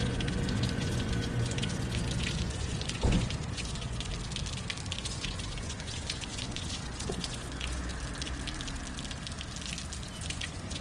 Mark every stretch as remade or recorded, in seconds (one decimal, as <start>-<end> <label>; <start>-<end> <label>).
0.0-4.1 remade; 4.1-5.0 recorded; 5.0-7.9 remade; 7.9-10.0 recorded; 10.0-10.8 remade